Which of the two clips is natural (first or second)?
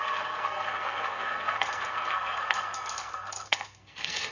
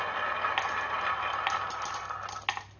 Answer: second